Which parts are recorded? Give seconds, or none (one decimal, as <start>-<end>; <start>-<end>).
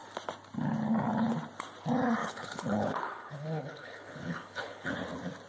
0.0-2.2; 4.9-5.5